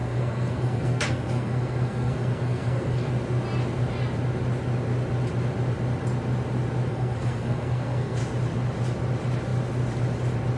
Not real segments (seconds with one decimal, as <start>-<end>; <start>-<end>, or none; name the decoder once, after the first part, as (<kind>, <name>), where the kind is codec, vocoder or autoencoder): 0.0-3.1 (codec, SNAC); 6.9-8.2